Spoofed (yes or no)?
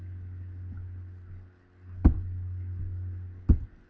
no